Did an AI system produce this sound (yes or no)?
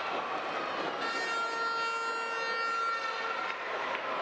no